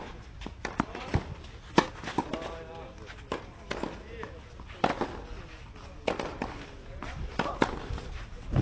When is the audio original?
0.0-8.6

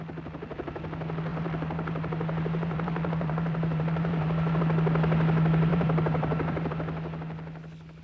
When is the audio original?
0.0-1.3; 4.6-5.7; 6.7-8.0

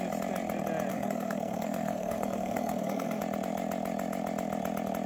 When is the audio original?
0.0-0.9; 3.2-5.1

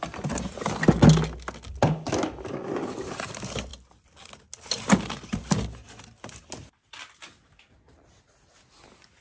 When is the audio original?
0.0-9.2

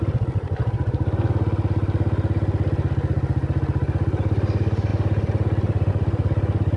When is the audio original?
0.0-6.8

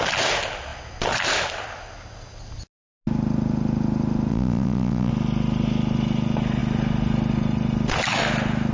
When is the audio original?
0.0-4.3; 5.1-8.7